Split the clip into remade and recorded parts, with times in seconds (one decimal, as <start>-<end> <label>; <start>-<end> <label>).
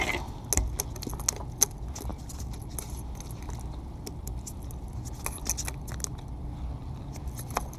0.0-7.8 recorded